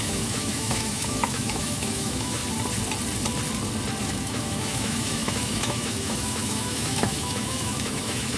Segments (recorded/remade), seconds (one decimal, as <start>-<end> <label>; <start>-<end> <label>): 0.0-2.4 remade; 2.4-4.0 recorded; 4.0-8.4 remade